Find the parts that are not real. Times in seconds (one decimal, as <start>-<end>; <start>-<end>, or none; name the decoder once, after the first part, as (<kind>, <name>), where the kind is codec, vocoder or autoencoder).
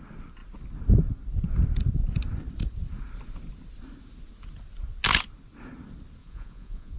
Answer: 6.2-7.0 (vocoder, Vocos)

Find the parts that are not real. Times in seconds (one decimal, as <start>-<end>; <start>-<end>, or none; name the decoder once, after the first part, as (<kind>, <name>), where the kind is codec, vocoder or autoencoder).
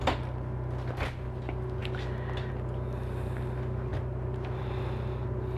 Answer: none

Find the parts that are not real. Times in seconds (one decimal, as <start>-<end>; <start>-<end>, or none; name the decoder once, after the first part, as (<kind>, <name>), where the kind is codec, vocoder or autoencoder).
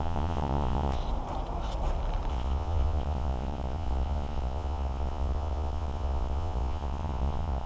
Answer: 0.0-1.0 (vocoder, Vocos); 2.3-7.7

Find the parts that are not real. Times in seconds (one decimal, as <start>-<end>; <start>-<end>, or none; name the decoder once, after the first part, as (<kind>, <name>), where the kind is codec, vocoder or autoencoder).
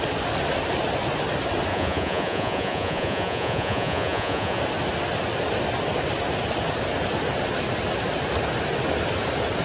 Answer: 1.7-4.6 (vocoder, Vocos)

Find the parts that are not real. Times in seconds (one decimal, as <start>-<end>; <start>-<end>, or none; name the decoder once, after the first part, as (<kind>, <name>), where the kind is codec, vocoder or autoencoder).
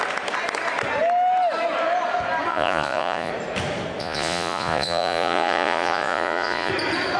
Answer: 2.5-3.3 (vocoder, Vocos); 4.0-6.7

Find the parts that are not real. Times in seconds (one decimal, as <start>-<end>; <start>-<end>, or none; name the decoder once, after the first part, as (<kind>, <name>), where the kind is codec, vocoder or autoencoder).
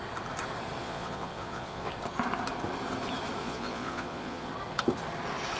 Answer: 0.8-1.9 (vocoder, Vocos); 3.4-4.5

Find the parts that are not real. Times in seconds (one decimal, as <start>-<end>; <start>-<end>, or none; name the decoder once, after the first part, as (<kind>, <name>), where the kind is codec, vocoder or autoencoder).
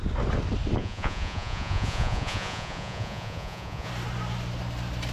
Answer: 0.8-3.9 (vocoder, Vocos)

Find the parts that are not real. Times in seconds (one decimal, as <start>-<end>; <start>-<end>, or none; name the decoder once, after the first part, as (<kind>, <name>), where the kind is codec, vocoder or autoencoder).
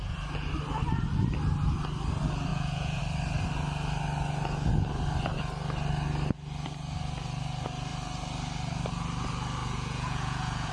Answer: 2.5-3.0 (vocoder, Vocos); 9.6-10.7